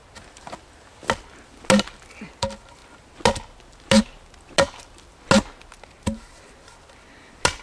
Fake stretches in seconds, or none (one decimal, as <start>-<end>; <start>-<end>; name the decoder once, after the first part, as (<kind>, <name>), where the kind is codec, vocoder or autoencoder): none